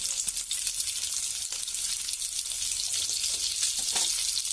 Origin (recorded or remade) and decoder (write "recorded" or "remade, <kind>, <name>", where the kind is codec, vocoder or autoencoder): recorded